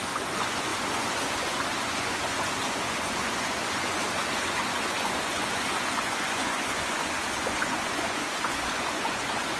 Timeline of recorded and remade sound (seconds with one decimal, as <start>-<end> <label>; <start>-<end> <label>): 0.0-9.6 remade